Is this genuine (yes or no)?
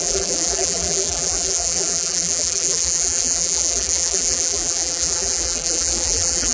no